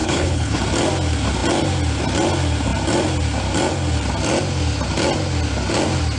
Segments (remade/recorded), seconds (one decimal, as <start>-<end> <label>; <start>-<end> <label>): 0.0-0.6 remade; 0.6-6.2 recorded